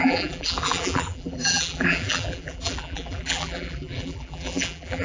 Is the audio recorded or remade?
remade